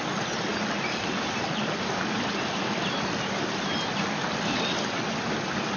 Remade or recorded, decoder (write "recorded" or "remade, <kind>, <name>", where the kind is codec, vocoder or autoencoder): recorded